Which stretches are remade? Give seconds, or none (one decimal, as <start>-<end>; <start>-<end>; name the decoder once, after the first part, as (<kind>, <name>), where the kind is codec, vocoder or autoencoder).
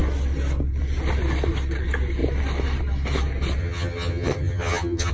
3.6-5.1 (vocoder, HiFi-GAN)